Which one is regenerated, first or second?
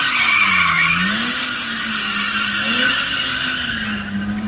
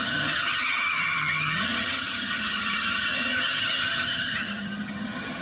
second